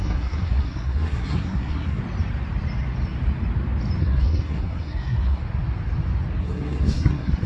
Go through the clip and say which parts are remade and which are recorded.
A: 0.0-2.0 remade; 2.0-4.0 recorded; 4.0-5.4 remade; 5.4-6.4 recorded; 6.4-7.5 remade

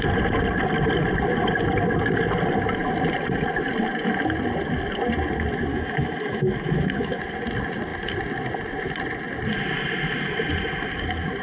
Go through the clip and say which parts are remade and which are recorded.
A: 0.0-5.7 recorded; 5.7-7.2 remade; 7.2-11.4 recorded

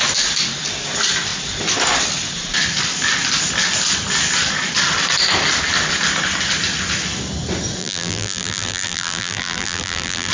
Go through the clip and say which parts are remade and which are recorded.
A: 0.0-7.8 recorded; 7.8-10.3 remade

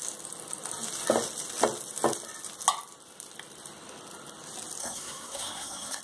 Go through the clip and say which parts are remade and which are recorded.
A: 0.0-4.8 recorded; 4.8-6.0 remade

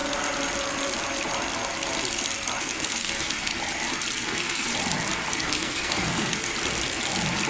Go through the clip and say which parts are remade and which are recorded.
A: 0.0-2.6 recorded; 2.6-3.5 remade; 3.5-4.2 recorded; 4.2-4.7 remade; 4.7-5.3 recorded; 5.3-6.5 remade; 6.5-7.5 recorded

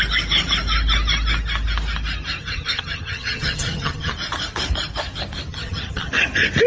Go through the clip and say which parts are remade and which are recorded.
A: 0.0-2.4 recorded; 2.4-4.1 remade; 4.1-5.5 recorded; 5.5-6.1 remade; 6.1-6.7 recorded

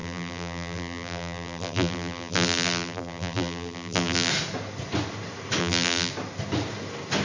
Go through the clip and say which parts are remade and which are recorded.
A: 0.0-4.3 remade; 4.3-5.6 recorded; 5.6-6.1 remade; 6.1-7.2 recorded

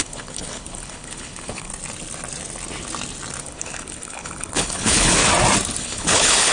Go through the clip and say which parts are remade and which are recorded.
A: 0.0-1.7 remade; 1.7-3.4 recorded; 3.4-5.2 remade; 5.2-5.8 recorded; 5.8-6.5 remade